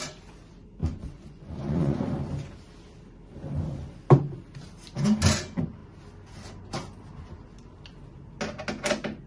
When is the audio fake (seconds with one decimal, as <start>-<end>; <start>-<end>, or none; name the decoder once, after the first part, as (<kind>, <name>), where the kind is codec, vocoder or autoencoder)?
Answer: 0.8-2.0 (vocoder, Vocos)